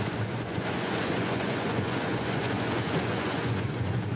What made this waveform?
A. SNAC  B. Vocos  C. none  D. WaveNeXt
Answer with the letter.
B